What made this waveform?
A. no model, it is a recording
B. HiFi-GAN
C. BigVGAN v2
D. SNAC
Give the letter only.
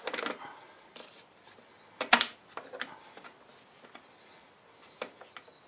A